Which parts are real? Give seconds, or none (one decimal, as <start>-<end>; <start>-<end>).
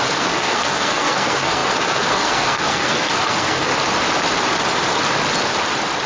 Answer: 3.7-6.1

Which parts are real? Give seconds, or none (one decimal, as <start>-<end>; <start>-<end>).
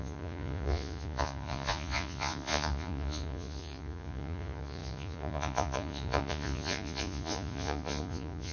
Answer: none